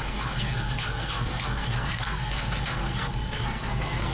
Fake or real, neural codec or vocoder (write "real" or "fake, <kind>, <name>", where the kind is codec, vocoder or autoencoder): fake, codec, SNAC